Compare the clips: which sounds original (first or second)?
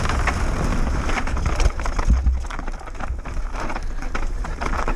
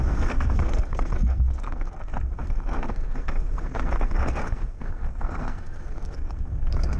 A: first